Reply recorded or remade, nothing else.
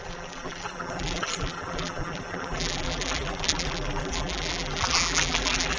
remade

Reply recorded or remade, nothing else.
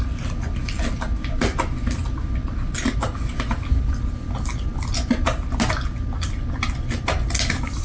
recorded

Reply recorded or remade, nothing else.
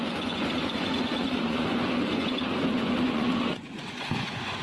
remade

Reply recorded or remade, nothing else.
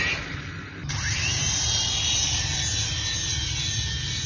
recorded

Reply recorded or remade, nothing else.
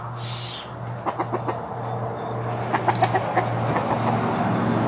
recorded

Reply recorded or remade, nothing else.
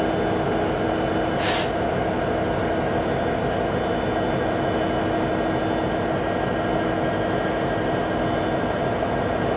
recorded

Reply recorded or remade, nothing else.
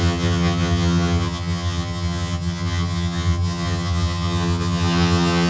remade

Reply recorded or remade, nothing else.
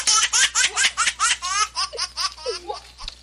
recorded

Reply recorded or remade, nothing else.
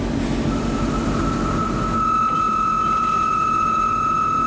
recorded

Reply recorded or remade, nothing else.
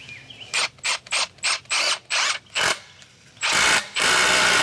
recorded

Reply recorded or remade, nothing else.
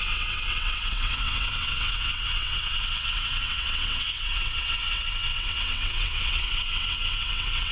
remade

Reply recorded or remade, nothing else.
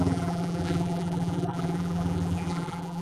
remade